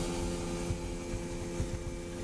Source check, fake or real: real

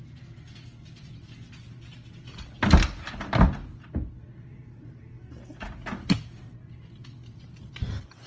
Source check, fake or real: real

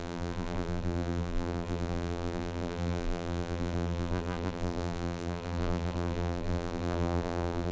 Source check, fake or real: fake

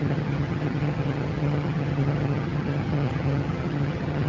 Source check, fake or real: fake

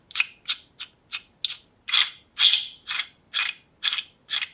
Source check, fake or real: real